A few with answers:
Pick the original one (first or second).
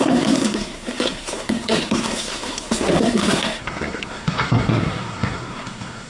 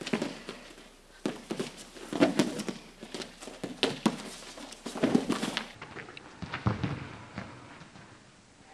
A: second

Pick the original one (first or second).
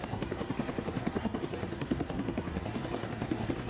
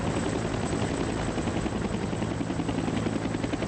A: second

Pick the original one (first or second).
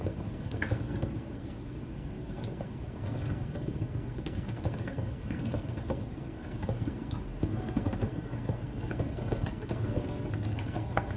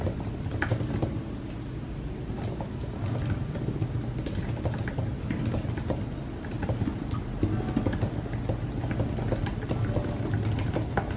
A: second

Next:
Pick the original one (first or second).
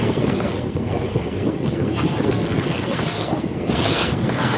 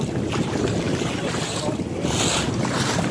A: second